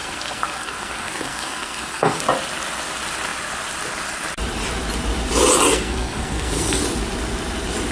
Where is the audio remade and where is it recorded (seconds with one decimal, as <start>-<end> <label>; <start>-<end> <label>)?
0.0-2.2 remade; 2.2-5.7 recorded; 5.7-6.8 remade; 6.8-7.9 recorded